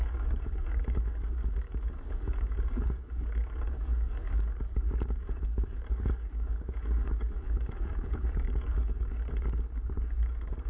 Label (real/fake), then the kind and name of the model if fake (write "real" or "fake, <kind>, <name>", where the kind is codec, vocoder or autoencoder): fake, codec, DAC